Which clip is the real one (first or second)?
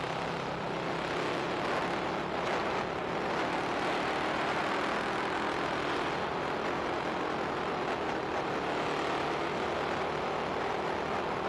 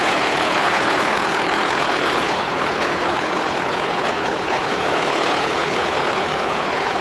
first